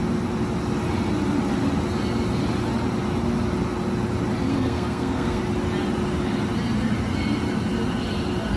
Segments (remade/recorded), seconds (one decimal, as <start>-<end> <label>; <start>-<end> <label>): 0.0-4.5 recorded; 4.5-5.4 remade; 5.4-8.6 recorded